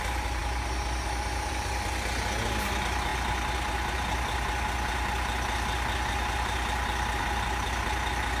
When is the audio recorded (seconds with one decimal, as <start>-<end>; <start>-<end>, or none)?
0.0-8.4